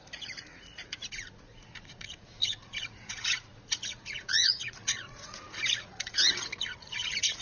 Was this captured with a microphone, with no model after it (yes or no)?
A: no